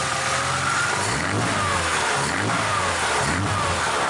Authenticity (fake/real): real